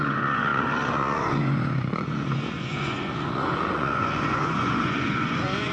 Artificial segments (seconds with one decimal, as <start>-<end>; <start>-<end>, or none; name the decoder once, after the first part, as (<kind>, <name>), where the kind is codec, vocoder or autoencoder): 0.0-5.7 (vocoder, Vocos)